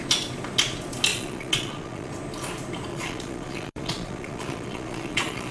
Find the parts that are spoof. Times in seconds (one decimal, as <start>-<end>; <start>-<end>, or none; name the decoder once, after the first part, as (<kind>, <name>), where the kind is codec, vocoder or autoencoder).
1.1-2.1 (vocoder, Vocos); 2.9-5.5

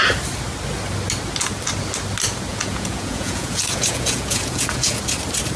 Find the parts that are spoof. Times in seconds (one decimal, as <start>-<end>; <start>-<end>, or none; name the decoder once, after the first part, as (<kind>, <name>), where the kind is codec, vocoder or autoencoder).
2.5-5.0 (vocoder, Vocos)

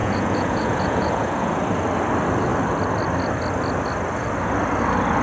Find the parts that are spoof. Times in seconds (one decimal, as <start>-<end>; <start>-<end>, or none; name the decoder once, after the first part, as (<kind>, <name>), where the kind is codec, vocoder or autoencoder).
0.0-1.6 (vocoder, Vocos)

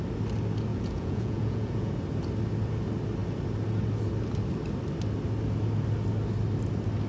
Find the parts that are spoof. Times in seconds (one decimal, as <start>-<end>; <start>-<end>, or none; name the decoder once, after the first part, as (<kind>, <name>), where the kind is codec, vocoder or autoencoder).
0.7-1.9 (vocoder, Vocos)

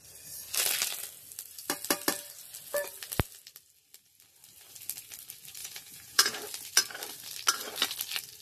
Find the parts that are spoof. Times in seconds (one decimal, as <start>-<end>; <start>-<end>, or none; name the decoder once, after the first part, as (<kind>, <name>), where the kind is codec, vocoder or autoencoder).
5.6-6.4 (vocoder, Vocos)

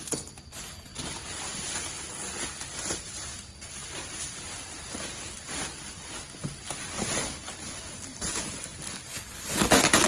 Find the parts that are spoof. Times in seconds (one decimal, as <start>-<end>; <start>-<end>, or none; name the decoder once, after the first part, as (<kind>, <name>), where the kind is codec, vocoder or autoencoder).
none

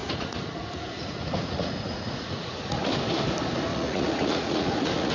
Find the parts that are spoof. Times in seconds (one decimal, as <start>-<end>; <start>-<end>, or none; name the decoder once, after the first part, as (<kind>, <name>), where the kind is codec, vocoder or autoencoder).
0.0-2.9 (vocoder, Vocos); 3.7-5.1

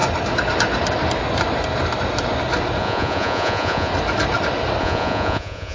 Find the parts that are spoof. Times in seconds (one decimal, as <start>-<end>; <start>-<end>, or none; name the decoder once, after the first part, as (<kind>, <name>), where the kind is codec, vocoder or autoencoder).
2.8-3.9 (vocoder, Vocos); 4.8-5.7